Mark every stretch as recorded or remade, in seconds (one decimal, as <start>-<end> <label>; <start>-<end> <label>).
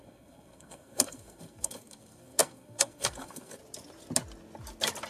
0.0-3.6 remade; 3.6-5.1 recorded